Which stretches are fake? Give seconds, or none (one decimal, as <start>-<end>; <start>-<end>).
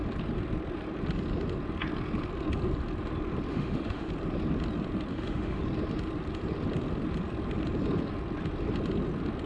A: 3.5-4.1; 5.1-5.6